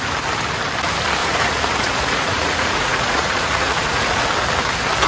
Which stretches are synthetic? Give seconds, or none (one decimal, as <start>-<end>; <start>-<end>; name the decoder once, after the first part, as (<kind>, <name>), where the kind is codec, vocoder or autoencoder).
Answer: 1.2-4.3 (vocoder, Vocos)